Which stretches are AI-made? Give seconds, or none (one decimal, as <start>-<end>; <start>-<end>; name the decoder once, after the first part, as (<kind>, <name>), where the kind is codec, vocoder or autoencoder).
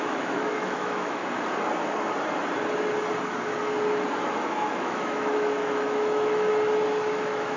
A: 0.0-1.2 (autoencoder, DAC-VAE); 4.8-6.5; 7.1-7.6